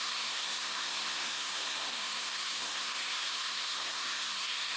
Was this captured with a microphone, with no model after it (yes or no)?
no